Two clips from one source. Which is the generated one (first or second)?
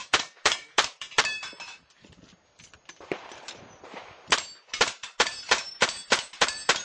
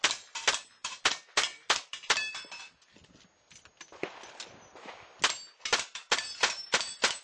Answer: first